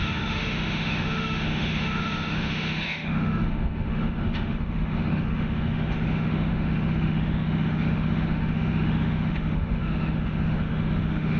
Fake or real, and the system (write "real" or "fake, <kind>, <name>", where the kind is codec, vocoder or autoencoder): fake, autoencoder, DAC-VAE